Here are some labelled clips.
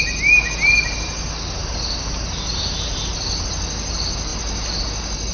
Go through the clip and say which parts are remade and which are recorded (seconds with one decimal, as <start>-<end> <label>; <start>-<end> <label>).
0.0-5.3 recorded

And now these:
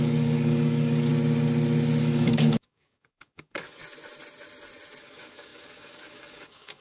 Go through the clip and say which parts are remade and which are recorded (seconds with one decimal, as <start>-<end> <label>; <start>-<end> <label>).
0.0-1.1 remade; 1.1-2.0 recorded; 2.0-3.8 remade; 3.8-5.0 recorded; 5.0-6.8 remade

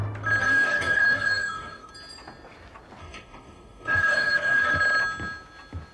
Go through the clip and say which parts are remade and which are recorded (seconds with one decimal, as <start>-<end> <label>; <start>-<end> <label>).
0.0-0.4 recorded; 0.4-1.9 remade; 1.9-3.0 recorded; 3.0-4.7 remade; 4.7-5.9 recorded

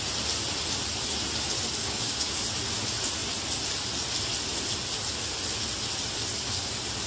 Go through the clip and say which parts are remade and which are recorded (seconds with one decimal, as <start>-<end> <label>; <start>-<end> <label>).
0.0-1.8 recorded; 1.8-2.3 remade; 2.3-7.1 recorded

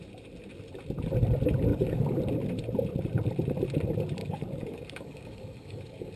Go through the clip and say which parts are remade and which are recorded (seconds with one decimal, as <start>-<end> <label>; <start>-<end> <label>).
0.0-1.7 recorded; 1.7-2.2 remade; 2.2-4.2 recorded; 4.2-6.2 remade

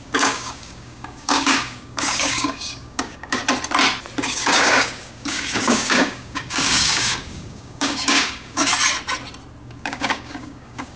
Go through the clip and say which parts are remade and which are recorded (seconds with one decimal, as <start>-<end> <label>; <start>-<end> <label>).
0.0-3.4 remade; 3.4-4.2 recorded; 4.2-8.7 remade; 8.7-9.6 recorded; 9.6-11.0 remade